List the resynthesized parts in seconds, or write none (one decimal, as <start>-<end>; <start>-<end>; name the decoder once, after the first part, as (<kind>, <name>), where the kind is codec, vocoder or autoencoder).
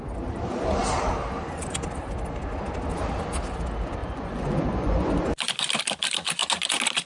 4.0-5.3 (vocoder, Vocos)